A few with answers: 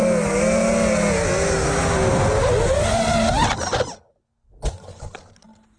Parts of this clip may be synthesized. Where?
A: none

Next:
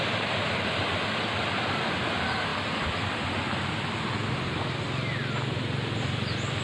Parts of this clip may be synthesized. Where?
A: none

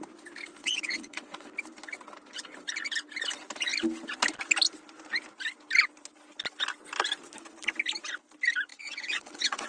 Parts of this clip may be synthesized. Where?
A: 0.6-1.5 (vocoder, WaveNeXt); 8.7-9.7

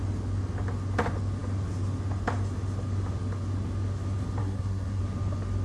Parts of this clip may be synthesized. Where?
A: 4.4-5.0 (codec, SNAC)